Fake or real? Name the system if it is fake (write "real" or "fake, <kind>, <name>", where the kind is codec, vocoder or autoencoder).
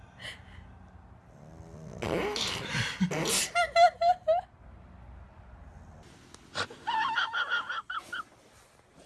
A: real